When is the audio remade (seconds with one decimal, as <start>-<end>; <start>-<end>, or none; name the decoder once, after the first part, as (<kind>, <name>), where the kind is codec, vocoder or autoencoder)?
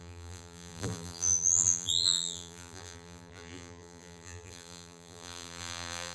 0.0-6.1 (vocoder, BigVGAN v2)